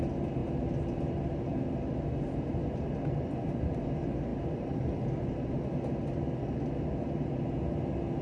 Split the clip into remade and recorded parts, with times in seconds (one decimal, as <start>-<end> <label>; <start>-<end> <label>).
0.0-8.2 recorded